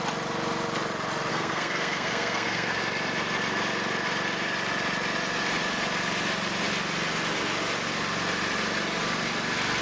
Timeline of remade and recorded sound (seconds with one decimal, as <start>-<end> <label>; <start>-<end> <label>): 0.0-1.3 recorded; 1.3-2.8 remade; 2.8-9.8 recorded